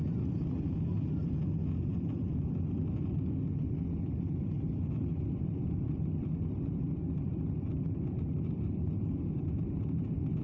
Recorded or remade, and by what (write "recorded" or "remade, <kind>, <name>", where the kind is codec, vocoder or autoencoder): recorded